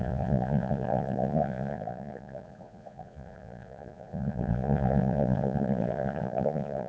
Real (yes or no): no